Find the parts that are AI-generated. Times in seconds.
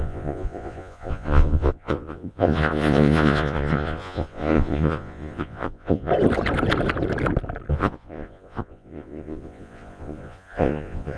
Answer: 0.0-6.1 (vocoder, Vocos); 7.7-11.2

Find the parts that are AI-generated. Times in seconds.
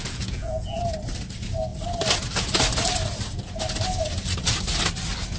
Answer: 0.0-0.8 (vocoder, Vocos)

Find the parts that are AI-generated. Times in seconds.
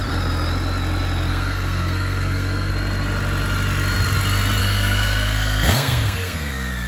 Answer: 1.3-2.7 (codec, SNAC); 4.6-6.9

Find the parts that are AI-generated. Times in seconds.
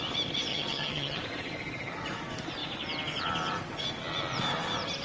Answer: 0.5-1.2 (vocoder, HiFi-GAN)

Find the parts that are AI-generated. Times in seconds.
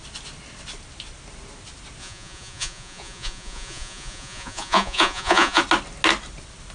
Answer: 2.0-5.6 (vocoder, Vocos)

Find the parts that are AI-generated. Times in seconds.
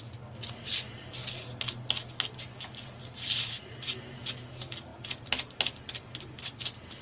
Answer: none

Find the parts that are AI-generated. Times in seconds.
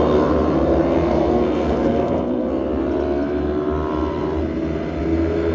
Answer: 1.0-2.5 (codec, SNAC)